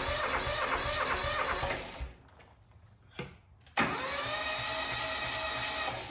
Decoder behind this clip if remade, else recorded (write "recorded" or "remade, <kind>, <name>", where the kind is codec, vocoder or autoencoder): recorded